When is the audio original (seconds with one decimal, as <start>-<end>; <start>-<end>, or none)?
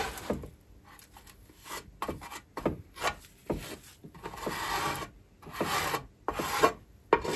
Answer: 0.0-7.4